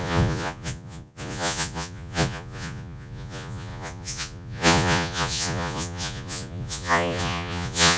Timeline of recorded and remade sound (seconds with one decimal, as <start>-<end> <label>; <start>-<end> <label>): 0.0-8.0 remade